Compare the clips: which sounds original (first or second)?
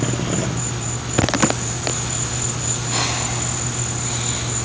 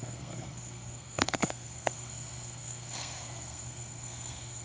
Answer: first